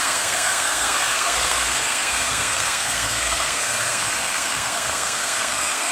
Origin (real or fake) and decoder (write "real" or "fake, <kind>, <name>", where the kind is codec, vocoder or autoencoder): fake, codec, SNAC